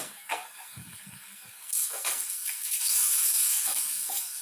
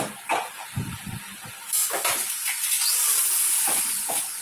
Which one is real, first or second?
second